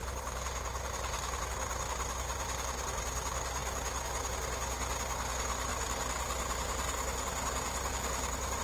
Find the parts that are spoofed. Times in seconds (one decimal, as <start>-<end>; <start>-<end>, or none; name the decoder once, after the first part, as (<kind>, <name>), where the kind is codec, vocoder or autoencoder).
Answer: 0.0-1.4 (vocoder, BigVGAN v2); 2.3-3.0; 5.7-8.6